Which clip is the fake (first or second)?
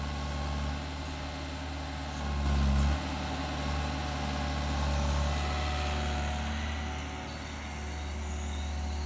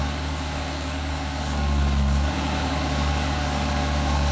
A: second